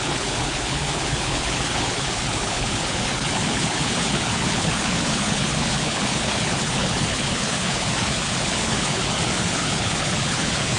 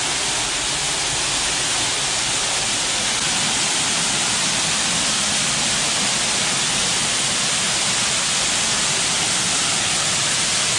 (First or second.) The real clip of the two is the second